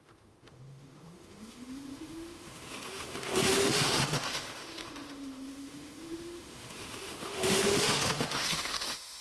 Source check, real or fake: fake